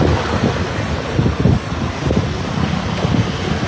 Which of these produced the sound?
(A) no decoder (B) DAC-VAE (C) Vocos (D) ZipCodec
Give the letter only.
A